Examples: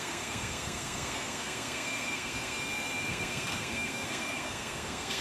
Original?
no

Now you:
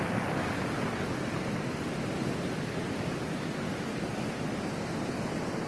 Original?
yes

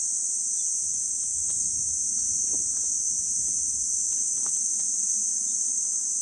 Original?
yes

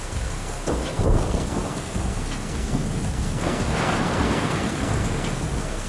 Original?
no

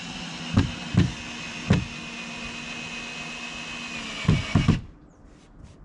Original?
yes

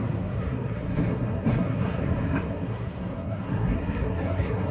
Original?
no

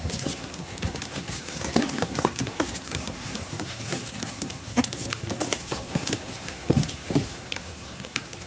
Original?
no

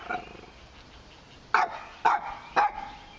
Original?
yes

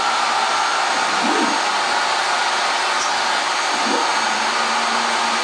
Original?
yes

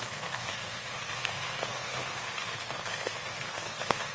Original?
no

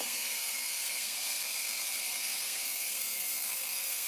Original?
no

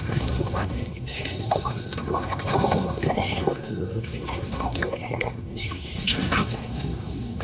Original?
no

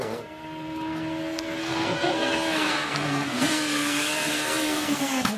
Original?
no